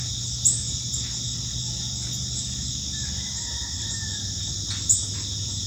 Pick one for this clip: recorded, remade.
recorded